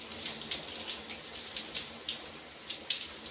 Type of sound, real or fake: real